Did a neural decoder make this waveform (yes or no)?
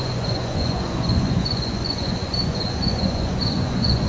yes